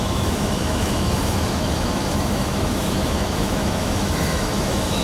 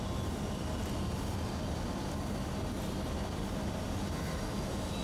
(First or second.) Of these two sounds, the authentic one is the second